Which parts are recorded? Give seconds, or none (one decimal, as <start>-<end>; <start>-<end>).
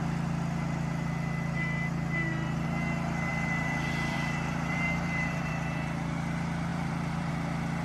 0.0-3.3; 5.5-6.7; 7.3-7.8